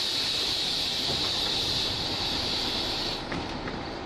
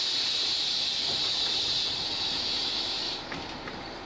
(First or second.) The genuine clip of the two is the second